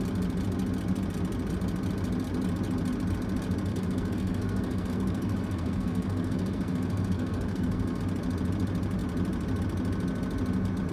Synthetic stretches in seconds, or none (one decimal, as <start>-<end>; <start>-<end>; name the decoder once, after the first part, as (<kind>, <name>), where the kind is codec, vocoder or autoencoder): 3.7-8.0 (codec, SNAC)